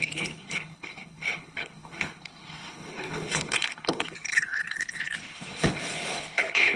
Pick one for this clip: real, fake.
fake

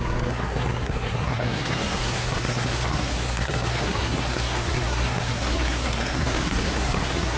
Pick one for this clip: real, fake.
fake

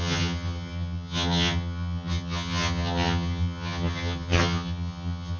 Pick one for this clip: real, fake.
fake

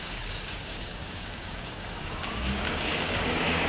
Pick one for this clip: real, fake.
fake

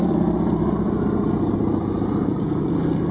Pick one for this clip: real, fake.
fake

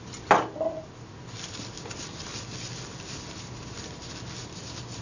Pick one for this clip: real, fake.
real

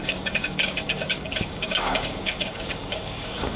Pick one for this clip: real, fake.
fake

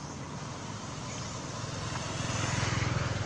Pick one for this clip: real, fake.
real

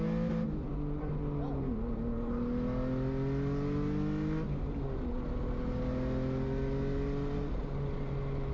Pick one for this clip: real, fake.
real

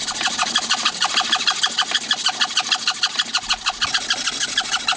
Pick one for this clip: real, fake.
real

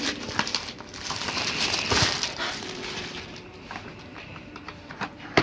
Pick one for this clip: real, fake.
fake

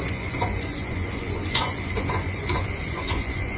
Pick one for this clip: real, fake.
fake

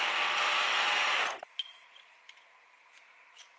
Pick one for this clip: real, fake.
fake